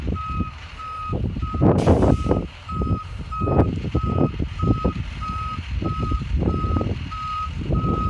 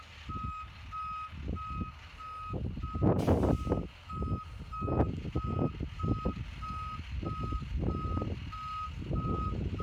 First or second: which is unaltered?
second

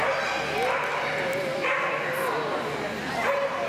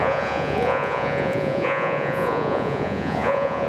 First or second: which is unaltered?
first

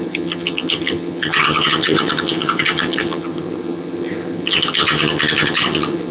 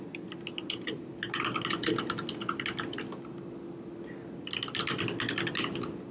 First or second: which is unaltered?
second